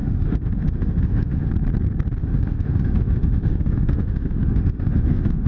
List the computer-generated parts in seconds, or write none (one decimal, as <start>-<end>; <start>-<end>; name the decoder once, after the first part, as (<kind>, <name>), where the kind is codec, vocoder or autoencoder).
0.0-1.5 (autoencoder, DAC-VAE); 2.2-5.5